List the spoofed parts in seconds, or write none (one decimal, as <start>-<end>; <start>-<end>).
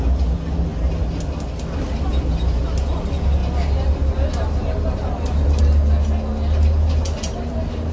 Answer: none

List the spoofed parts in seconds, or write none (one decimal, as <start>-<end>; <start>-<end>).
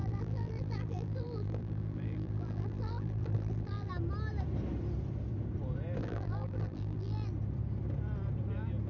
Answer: 0.0-3.9; 6.0-7.3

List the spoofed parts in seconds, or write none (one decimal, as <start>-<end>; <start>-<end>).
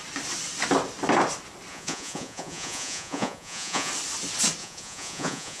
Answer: 1.7-3.9; 4.6-5.6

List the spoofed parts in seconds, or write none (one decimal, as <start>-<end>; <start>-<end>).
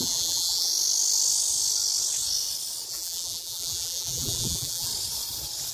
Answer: 0.0-0.7; 2.9-4.9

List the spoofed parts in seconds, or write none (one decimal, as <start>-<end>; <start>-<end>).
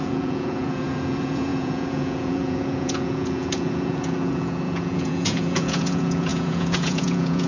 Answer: 0.0-7.5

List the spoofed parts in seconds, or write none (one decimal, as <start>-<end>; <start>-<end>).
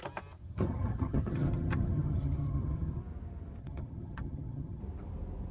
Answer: 0.4-3.0; 3.6-4.8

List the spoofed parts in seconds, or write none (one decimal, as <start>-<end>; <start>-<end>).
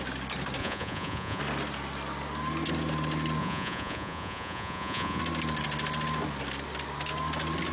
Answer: 0.6-1.4; 3.4-5.2